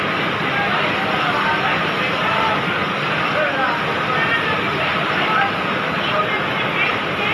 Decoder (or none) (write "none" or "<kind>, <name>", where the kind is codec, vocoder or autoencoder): none